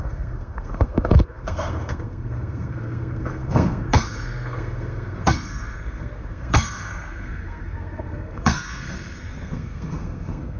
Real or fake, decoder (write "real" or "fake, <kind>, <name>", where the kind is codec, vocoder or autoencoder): fake, codec, SNAC